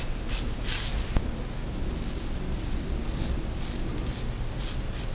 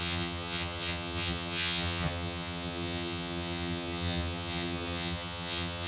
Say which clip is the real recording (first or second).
first